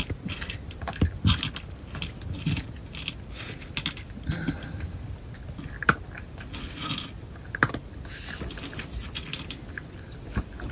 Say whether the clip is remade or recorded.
recorded